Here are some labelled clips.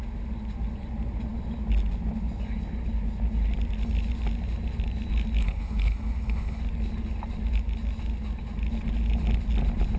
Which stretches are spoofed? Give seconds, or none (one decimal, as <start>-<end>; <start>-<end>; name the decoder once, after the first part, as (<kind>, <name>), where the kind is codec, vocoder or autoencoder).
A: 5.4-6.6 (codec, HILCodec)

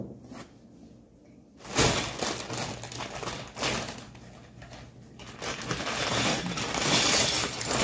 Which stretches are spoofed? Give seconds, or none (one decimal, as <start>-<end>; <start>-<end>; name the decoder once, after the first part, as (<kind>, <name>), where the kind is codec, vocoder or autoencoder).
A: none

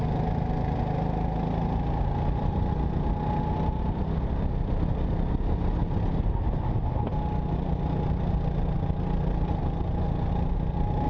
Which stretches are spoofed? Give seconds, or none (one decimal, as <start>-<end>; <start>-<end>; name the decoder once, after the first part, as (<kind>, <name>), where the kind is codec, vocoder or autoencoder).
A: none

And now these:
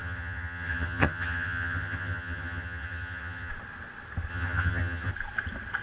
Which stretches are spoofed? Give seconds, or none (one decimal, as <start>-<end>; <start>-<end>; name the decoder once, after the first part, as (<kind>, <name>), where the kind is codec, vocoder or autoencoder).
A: 0.0-3.5 (vocoder, HiFi-GAN); 4.3-5.1

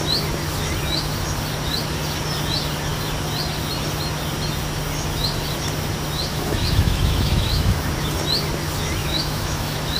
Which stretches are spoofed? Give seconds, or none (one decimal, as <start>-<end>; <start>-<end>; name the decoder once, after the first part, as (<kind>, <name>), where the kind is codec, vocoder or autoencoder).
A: 6.3-7.8 (autoencoder, DAC-VAE); 9.0-10.0

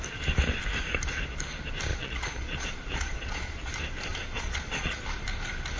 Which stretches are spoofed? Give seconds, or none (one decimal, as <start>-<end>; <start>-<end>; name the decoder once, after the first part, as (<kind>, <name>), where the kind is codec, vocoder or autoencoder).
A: 1.9-3.7 (vocoder, Vocos); 4.3-5.0